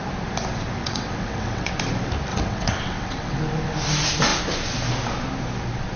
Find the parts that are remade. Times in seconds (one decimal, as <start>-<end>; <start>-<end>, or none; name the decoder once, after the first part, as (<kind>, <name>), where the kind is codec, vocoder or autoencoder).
0.8-1.7 (vocoder, WaveNeXt); 2.3-3.4